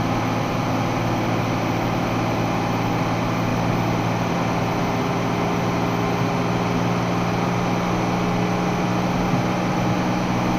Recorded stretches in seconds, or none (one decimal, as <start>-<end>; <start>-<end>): 0.0-10.6